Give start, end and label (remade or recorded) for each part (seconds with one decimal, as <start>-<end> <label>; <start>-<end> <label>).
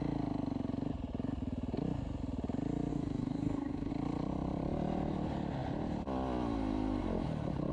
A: 0.0-2.9 recorded; 2.9-3.9 remade; 3.9-7.7 recorded